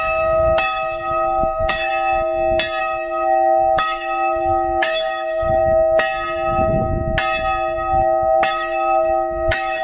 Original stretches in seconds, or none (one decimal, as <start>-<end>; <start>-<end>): 1.9-2.8; 5.6-8.5